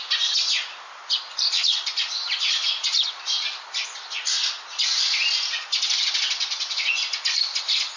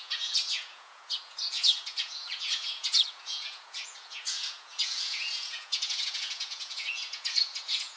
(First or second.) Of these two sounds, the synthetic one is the second